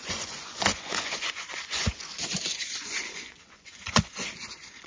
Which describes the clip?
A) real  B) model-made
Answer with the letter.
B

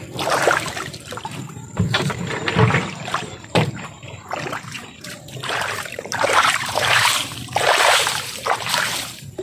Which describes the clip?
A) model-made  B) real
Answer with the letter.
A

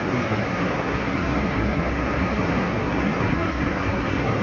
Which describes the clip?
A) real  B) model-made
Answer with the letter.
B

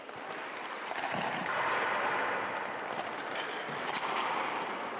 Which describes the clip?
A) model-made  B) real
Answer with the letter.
A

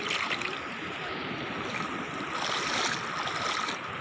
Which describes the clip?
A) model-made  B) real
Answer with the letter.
B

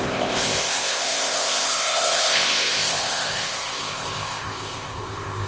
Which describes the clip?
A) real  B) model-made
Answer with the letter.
B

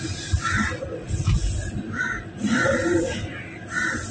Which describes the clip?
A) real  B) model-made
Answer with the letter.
A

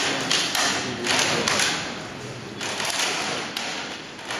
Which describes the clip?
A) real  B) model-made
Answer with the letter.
A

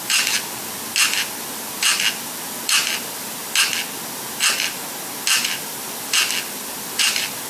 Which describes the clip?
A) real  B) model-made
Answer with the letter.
A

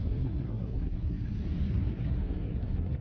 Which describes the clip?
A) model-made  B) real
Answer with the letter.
A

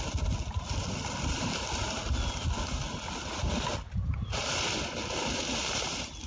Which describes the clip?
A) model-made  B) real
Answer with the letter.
B